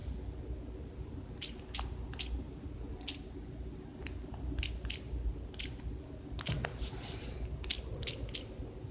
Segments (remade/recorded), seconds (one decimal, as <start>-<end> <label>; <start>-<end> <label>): 0.0-8.9 recorded